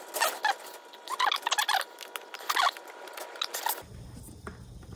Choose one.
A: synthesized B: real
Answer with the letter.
B